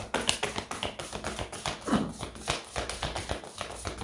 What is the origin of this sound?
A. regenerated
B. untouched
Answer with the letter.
B